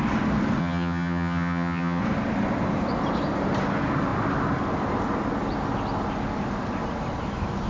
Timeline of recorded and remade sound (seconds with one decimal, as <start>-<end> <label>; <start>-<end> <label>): 0.0-0.6 recorded; 0.6-2.0 remade; 2.0-7.7 recorded